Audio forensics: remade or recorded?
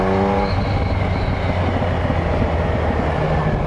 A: recorded